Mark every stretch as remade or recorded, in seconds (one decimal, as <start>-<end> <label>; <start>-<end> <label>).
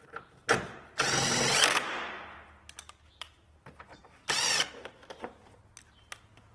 0.0-6.5 recorded